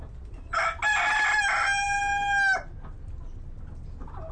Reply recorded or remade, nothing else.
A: recorded